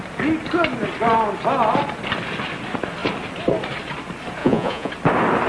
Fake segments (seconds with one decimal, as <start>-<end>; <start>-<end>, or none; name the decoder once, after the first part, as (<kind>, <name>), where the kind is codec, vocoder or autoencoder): 4.4-4.9 (vocoder, Vocos)